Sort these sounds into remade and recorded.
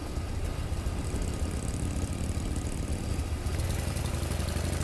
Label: recorded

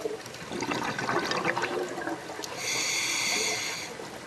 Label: recorded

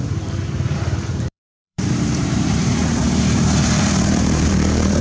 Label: remade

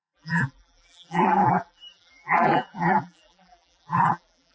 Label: remade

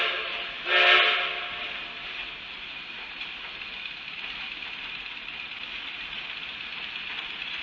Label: recorded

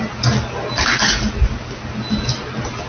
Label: recorded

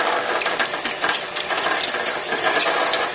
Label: remade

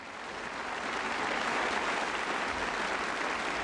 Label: recorded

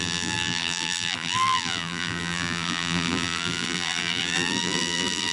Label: remade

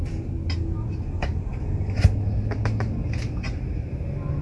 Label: recorded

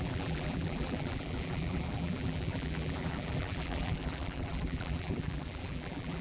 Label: remade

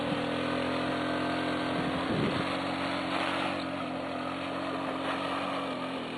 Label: recorded